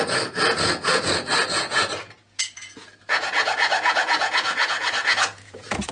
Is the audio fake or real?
fake